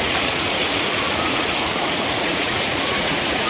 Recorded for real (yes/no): no